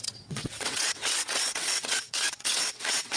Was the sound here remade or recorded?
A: remade